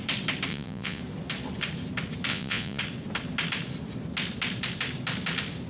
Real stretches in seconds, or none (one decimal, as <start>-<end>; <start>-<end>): 0.0-0.5; 1.0-2.3; 2.8-5.7

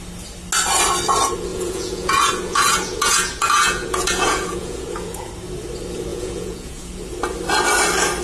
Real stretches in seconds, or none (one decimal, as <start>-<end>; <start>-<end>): 0.0-1.5; 5.3-6.1; 7.0-8.2

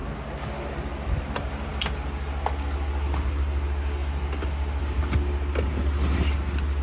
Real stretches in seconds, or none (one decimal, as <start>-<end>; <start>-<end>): 0.0-6.8

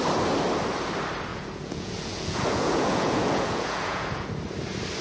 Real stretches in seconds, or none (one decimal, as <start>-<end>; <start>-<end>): 0.0-1.3; 4.3-5.0

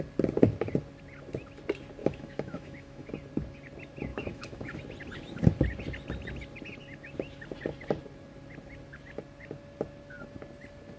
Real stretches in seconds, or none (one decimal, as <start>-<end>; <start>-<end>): 0.0-2.0; 3.1-4.1; 4.8-11.0